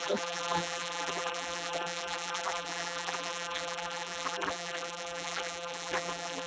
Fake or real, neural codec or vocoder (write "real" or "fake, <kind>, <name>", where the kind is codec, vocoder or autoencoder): fake, vocoder, BigVGAN v2